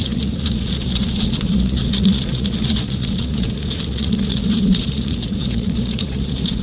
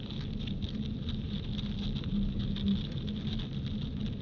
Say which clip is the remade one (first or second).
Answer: first